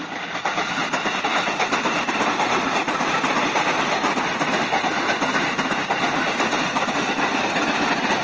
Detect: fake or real real